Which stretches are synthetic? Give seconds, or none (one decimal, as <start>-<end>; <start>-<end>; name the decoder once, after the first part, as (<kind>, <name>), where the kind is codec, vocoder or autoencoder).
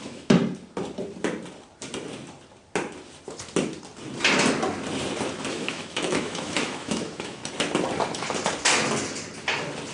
0.0-0.4 (autoencoder, DAC-VAE); 5.5-7.4